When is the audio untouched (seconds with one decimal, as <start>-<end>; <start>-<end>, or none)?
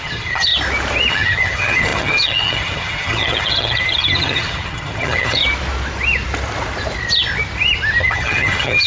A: 0.5-1.1; 5.4-8.0